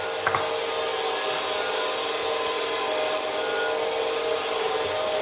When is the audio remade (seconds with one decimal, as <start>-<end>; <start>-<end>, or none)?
none